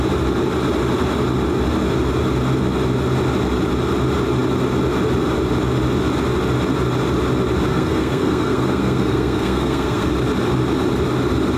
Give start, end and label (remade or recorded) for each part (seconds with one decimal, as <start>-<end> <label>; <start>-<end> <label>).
0.0-7.7 recorded; 7.7-10.1 remade; 10.1-11.6 recorded